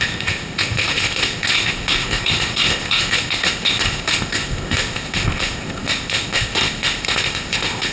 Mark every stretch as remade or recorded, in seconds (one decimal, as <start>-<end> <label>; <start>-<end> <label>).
0.0-7.9 remade